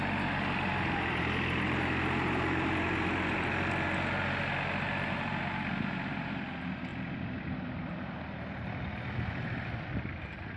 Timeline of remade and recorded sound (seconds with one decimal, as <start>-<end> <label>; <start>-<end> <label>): 0.0-10.6 recorded